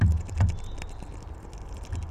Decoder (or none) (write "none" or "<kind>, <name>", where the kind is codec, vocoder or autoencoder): none